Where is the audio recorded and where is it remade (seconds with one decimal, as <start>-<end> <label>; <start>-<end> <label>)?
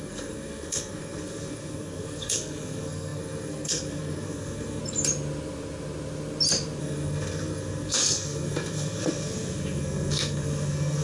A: 0.0-4.8 remade; 4.8-6.8 recorded; 6.8-11.0 remade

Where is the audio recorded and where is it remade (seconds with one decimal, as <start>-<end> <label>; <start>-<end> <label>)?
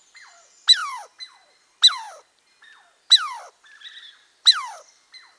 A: 0.0-5.4 recorded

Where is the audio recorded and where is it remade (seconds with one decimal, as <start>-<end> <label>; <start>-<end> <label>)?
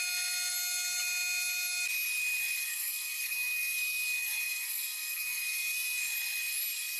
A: 0.0-2.6 recorded; 2.6-6.0 remade; 6.0-7.0 recorded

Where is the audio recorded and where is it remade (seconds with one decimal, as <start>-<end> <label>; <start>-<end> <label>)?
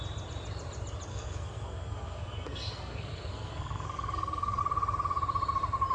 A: 0.0-1.1 recorded; 1.1-4.6 remade; 4.6-5.9 recorded